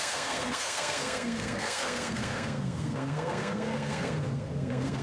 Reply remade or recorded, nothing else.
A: remade